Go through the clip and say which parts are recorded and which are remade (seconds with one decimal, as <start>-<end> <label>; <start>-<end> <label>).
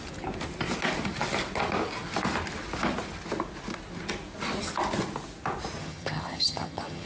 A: 0.0-5.8 recorded; 5.8-7.1 remade